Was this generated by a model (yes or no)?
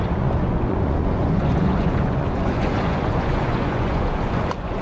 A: yes